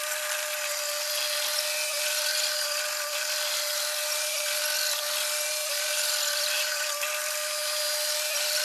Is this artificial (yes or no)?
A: no